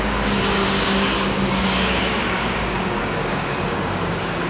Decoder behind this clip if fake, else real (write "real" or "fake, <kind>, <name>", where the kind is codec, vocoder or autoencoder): fake, codec, DAC